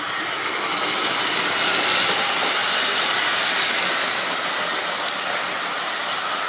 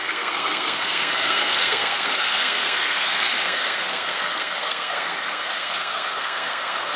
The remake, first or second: second